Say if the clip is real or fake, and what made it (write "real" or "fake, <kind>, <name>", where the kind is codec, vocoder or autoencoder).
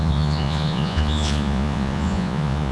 fake, vocoder, Vocos